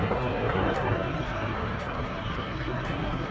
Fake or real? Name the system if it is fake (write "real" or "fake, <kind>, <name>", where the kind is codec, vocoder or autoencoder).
fake, codec, SNAC